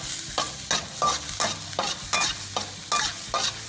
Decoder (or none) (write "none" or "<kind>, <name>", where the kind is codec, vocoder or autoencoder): none